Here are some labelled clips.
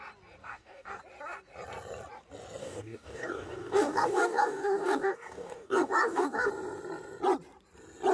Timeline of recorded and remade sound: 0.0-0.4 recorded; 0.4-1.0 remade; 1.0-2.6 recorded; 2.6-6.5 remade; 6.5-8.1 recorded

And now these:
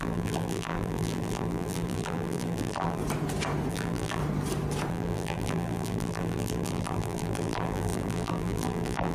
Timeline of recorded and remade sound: 0.0-3.0 remade; 3.0-3.7 recorded; 3.7-4.2 remade; 4.2-4.9 recorded; 4.9-9.1 remade

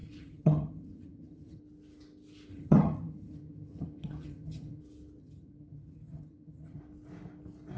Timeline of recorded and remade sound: 0.0-1.6 remade; 1.6-2.5 recorded; 2.5-4.8 remade; 4.8-5.2 recorded; 5.2-6.8 remade; 6.8-7.8 recorded

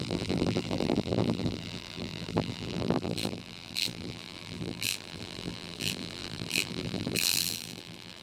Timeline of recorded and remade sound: 0.0-8.2 remade

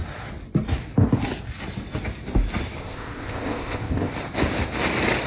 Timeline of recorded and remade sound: 0.0-2.8 recorded; 2.8-4.1 remade; 4.1-5.3 recorded

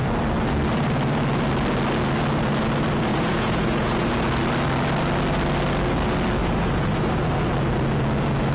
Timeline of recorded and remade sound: 0.0-3.1 recorded; 3.1-4.1 remade; 4.1-6.4 recorded; 6.4-7.2 remade; 7.2-8.5 recorded

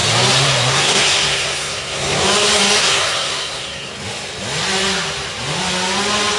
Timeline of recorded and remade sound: 0.0-0.7 recorded; 0.7-2.2 remade; 2.2-2.8 recorded; 2.8-3.9 remade; 3.9-6.4 recorded